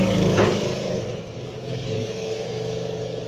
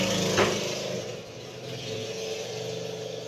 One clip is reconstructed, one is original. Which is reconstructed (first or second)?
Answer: first